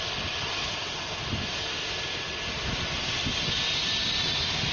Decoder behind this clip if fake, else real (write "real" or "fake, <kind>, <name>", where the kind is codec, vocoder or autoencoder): real